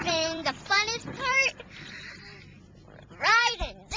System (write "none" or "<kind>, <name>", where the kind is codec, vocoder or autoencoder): vocoder, BigVGAN v2